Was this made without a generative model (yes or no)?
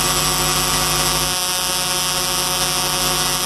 yes